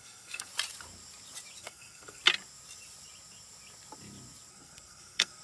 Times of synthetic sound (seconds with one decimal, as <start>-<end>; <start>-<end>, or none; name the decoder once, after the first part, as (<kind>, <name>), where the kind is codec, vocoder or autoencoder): 0.0-0.5 (codec, SNAC); 1.6-2.2; 4.5-5.4